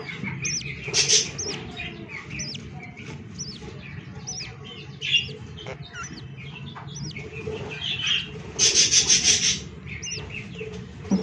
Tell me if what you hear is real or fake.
real